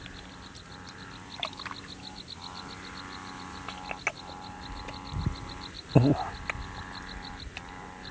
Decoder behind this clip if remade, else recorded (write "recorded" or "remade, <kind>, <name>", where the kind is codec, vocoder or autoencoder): recorded